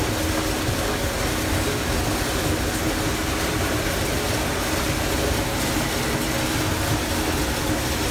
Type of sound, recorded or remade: recorded